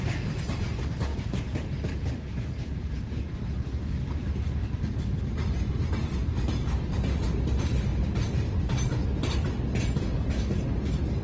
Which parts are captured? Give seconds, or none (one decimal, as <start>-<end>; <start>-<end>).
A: 0.0-1.1; 1.7-7.9; 9.5-11.2